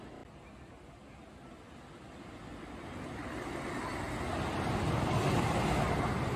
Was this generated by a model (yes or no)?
no